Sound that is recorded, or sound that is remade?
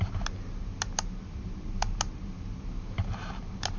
remade